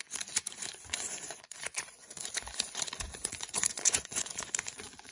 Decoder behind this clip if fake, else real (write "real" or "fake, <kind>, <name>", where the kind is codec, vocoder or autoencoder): fake, vocoder, Vocos